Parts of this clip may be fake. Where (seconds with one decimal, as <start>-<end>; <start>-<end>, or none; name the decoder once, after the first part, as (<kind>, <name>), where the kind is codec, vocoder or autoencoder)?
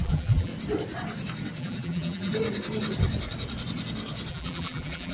0.0-0.5 (vocoder, BigVGAN v2); 1.6-2.3; 4.3-5.1